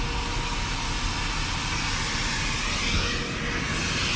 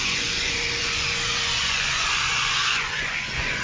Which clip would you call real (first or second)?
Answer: first